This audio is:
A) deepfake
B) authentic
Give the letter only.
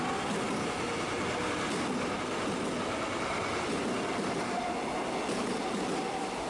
B